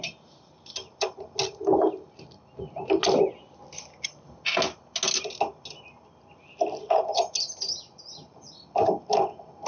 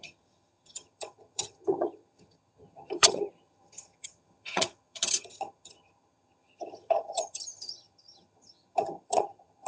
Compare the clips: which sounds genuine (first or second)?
first